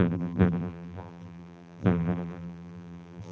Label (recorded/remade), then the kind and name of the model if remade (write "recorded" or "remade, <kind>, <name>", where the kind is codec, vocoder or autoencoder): remade, vocoder, BigVGAN v2